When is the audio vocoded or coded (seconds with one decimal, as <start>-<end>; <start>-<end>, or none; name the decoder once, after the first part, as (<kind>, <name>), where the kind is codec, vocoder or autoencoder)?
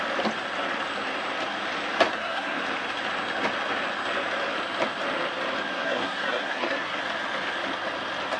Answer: 2.1-2.6 (codec, SNAC); 5.7-7.0